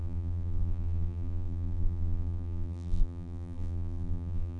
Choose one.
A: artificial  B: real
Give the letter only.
A